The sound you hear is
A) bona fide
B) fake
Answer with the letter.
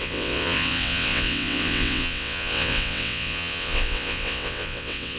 B